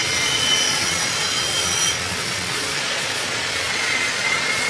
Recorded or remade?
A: remade